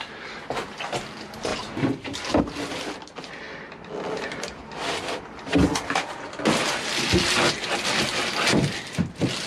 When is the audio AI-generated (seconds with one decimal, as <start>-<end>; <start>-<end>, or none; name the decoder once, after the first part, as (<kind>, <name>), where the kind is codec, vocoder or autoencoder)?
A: none